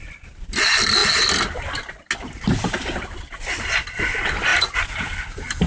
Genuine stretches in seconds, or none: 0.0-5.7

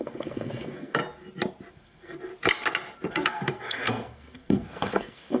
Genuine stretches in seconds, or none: 1.0-1.7; 2.3-3.1

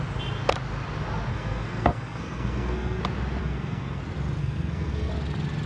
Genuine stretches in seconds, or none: 0.0-1.3; 3.0-3.4; 4.0-4.4; 5.1-5.7